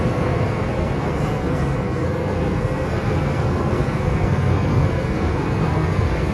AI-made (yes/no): yes